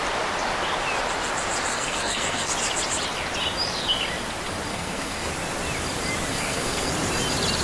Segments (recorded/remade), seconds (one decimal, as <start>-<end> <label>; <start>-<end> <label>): 0.0-1.7 recorded; 1.7-2.5 remade; 2.5-4.7 recorded; 4.7-5.3 remade; 5.3-6.3 recorded; 6.3-6.9 remade; 6.9-7.6 recorded